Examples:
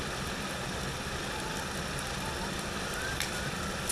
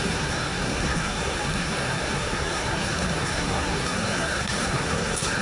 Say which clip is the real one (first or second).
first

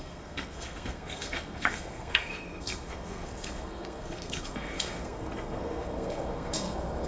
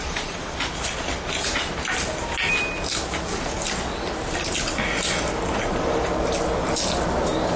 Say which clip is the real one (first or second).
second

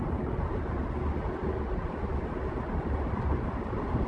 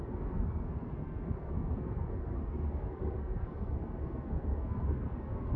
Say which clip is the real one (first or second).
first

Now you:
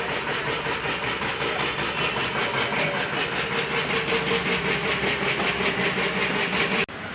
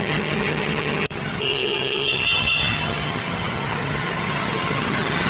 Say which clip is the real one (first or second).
first